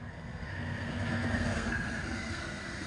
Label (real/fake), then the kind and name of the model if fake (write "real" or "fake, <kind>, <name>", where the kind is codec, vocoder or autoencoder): fake, codec, SNAC